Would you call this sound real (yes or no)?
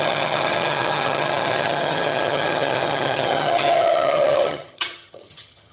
no